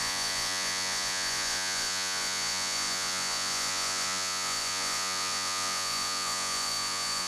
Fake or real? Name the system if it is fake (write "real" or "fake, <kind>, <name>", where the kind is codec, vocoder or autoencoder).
fake, vocoder, Vocos